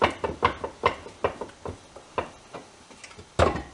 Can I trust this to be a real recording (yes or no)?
yes